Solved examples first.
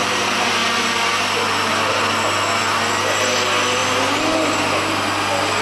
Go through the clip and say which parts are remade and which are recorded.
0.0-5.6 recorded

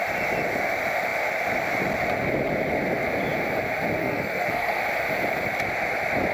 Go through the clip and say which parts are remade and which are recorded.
0.0-4.0 recorded; 4.0-4.8 remade; 4.8-6.3 recorded

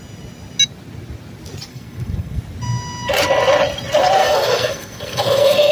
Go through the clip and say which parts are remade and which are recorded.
0.0-1.7 recorded; 1.7-2.4 remade; 2.4-4.2 recorded; 4.2-5.7 remade

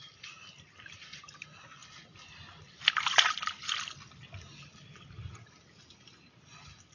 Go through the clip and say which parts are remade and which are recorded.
0.0-6.9 recorded

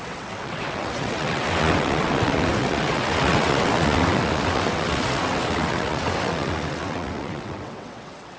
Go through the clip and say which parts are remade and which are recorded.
0.0-8.4 remade

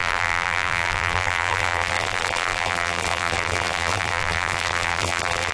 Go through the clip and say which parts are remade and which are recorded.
0.0-5.5 remade

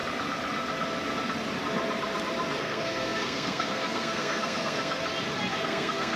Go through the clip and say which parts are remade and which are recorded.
0.0-2.6 recorded; 2.6-5.0 remade; 5.0-5.5 recorded; 5.5-6.2 remade

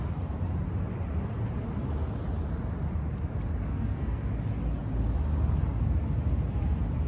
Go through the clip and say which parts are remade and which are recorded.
0.0-3.6 recorded; 3.6-4.3 remade; 4.3-7.1 recorded